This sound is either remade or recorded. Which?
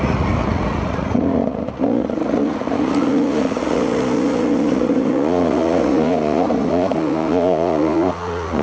remade